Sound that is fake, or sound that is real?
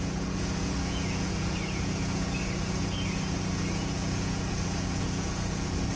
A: fake